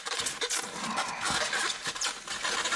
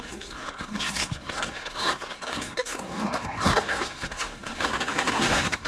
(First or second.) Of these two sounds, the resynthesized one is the second